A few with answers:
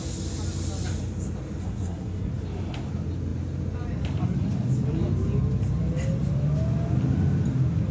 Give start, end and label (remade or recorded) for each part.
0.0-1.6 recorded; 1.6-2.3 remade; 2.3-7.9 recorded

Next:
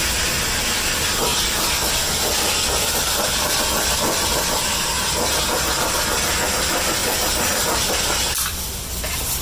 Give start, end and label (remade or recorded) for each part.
0.0-7.0 recorded; 7.0-7.7 remade; 7.7-9.4 recorded

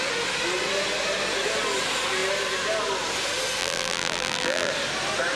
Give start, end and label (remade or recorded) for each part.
0.0-3.6 recorded; 3.6-4.7 remade; 4.7-5.4 recorded